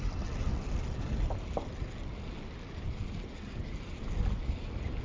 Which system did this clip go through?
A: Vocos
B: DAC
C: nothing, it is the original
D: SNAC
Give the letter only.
C